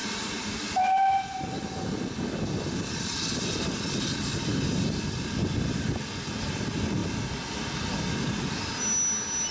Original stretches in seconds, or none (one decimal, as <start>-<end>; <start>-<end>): 0.0-9.5